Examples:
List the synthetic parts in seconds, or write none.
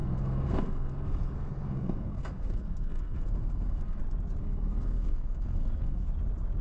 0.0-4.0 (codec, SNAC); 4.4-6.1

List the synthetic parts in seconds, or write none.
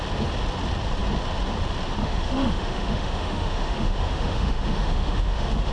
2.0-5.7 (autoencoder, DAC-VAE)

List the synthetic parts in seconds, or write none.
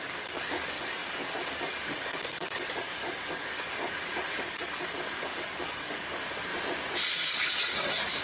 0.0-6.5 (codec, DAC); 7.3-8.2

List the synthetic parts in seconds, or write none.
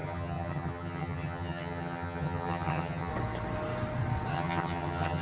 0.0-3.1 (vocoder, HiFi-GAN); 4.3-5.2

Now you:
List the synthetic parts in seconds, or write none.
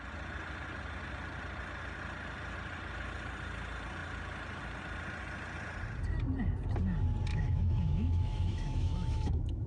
7.3-9.7 (autoencoder, DAC-VAE)